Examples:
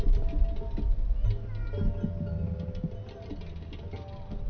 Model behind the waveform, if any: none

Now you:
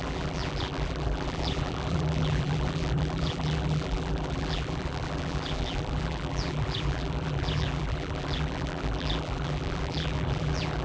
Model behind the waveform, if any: vocoder, BigVGAN v2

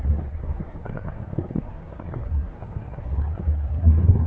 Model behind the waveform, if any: codec, SNAC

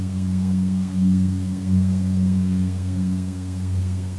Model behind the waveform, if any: codec, SNAC